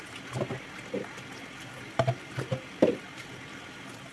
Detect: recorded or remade recorded